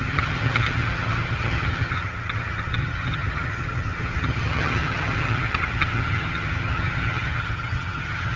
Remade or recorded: remade